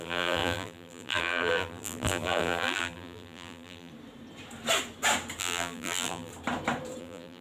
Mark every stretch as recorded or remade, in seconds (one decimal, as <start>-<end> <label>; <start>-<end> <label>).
0.0-3.9 remade; 3.9-5.4 recorded; 5.4-6.3 remade; 6.3-7.0 recorded; 7.0-7.4 remade